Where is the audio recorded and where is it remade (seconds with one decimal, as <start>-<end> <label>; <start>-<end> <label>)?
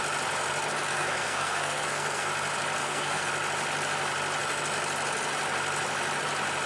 0.0-0.9 recorded; 0.9-2.3 remade; 2.3-2.8 recorded; 2.8-3.3 remade; 3.3-6.7 recorded